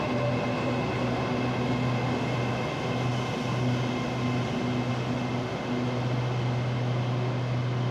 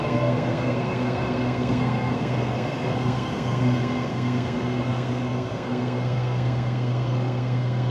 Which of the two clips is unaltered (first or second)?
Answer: first